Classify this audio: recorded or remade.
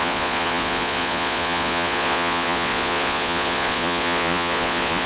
remade